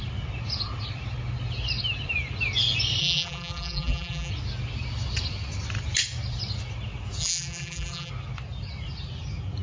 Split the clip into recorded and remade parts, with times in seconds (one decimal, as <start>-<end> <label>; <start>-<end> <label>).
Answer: 0.0-3.0 recorded; 3.0-4.3 remade; 4.3-7.2 recorded; 7.2-8.1 remade; 8.1-9.6 recorded